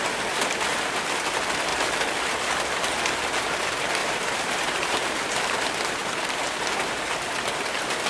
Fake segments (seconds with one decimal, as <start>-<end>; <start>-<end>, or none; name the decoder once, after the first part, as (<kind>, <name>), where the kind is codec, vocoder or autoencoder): 1.7-2.5 (vocoder, BigVGAN v2); 4.0-5.5; 6.0-6.5